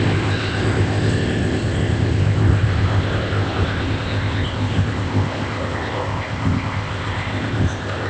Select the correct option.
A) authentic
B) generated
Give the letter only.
B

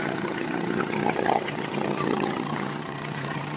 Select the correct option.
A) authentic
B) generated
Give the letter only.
B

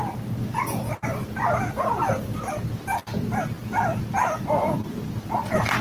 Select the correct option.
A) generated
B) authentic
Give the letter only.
B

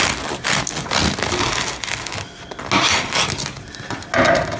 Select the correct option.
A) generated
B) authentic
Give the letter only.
B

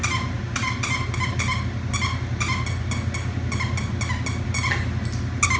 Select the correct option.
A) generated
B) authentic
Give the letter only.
B